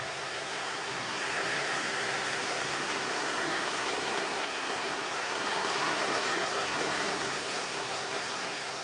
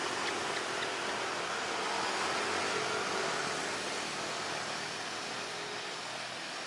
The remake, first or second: first